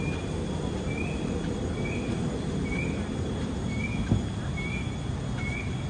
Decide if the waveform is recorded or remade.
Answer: recorded